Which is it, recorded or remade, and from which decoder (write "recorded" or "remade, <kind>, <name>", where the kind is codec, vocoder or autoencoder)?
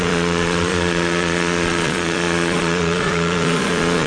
remade, vocoder, Vocos